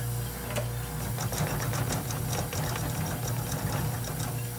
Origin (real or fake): real